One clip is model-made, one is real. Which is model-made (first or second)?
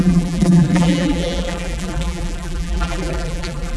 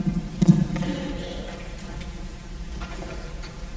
first